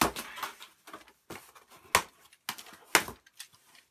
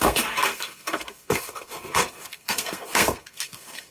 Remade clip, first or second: second